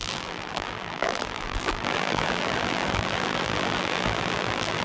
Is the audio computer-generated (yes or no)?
yes